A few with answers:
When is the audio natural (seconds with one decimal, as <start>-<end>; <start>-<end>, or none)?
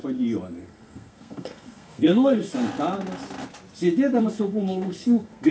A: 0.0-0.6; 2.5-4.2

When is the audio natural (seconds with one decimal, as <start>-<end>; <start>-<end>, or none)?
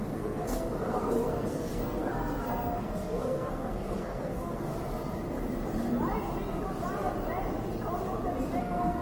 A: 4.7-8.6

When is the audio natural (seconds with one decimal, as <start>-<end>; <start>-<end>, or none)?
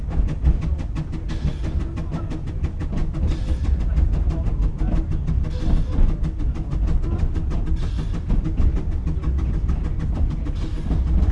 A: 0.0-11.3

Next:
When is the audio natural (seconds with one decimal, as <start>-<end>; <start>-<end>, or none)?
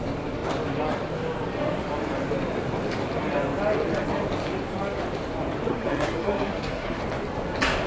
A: 0.0-5.7; 7.0-7.9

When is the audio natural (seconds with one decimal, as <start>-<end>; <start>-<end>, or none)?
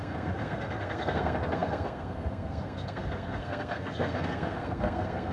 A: none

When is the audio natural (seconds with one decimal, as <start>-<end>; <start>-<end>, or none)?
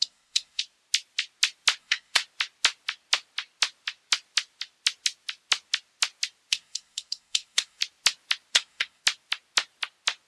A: 0.6-1.8; 2.2-6.5; 7.8-8.5; 9.0-10.3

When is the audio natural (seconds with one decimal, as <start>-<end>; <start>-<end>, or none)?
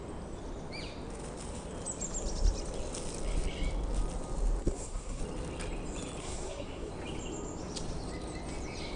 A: 0.0-4.6; 5.2-6.2; 6.9-9.0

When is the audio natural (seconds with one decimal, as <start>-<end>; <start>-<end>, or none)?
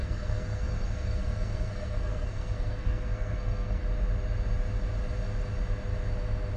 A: 3.8-6.6